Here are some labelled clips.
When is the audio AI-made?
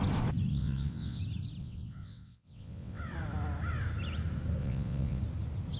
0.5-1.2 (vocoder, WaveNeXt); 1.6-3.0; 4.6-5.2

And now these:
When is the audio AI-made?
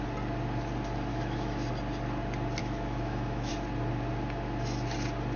1.1-1.7 (autoencoder, DAC-VAE); 2.6-3.5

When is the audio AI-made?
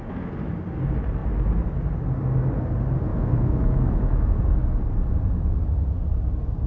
3.1-4.3 (autoencoder, DAC-VAE)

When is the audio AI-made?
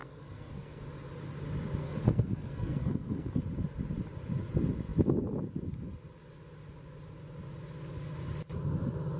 0.0-0.8 (codec, SNAC); 1.8-3.4